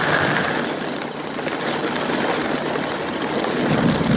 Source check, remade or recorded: recorded